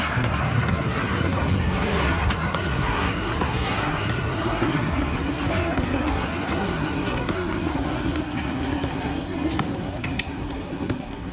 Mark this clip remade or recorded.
remade